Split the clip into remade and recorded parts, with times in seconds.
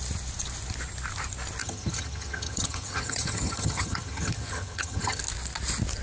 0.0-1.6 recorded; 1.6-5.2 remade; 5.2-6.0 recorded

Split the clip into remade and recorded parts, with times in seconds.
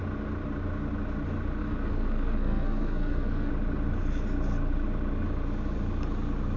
0.0-1.6 recorded; 1.6-3.5 remade; 3.5-6.6 recorded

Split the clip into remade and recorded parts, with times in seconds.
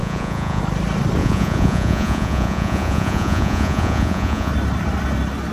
0.0-0.6 remade; 0.6-1.2 recorded; 1.2-4.5 remade; 4.5-5.5 recorded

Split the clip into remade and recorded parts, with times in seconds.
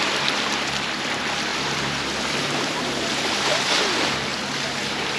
0.0-1.5 recorded; 1.5-3.7 remade; 3.7-5.2 recorded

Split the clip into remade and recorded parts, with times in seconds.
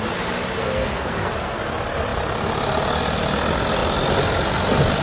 0.0-0.6 recorded; 0.6-1.6 remade; 1.6-5.0 recorded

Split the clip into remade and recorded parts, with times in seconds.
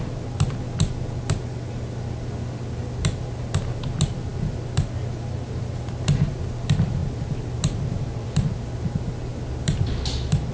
0.0-10.5 recorded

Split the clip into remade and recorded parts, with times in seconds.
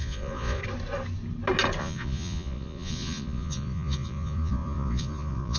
0.0-0.6 remade; 0.6-1.8 recorded; 1.8-5.6 remade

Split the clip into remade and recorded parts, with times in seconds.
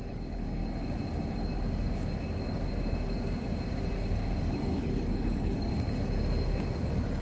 0.0-0.6 remade; 0.6-4.4 recorded; 4.4-5.7 remade; 5.7-6.8 recorded; 6.8-7.2 remade